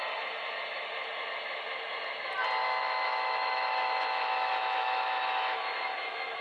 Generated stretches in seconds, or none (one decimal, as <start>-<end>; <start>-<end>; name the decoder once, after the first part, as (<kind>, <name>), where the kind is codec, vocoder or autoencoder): 2.6-6.4 (autoencoder, DAC-VAE)